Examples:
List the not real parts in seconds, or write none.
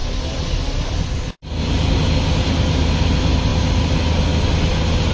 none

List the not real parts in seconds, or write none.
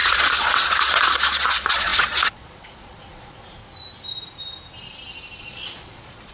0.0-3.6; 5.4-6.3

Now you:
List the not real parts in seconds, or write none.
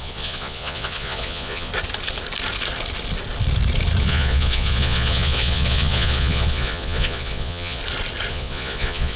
0.0-1.7; 4.0-7.8; 8.3-9.2